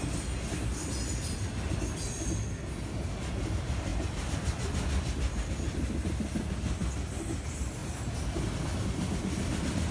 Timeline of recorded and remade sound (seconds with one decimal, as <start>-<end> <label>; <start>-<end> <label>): 0.0-9.9 recorded